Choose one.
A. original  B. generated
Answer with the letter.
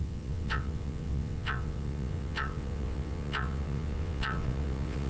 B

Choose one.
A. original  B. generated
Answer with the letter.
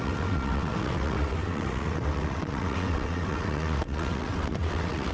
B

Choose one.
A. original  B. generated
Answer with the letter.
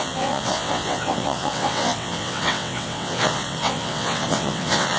B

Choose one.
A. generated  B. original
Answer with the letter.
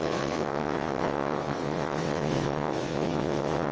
A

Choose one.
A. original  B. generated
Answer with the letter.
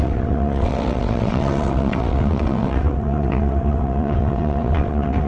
B